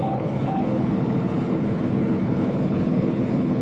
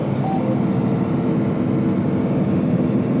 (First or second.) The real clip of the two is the second